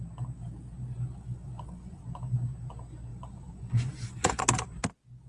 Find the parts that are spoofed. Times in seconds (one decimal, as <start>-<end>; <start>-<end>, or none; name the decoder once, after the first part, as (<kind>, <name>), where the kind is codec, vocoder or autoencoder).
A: 1.1-2.0 (vocoder, Vocos); 3.1-4.4